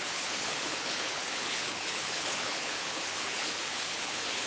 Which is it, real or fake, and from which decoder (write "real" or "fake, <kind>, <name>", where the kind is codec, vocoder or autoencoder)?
fake, codec, HILCodec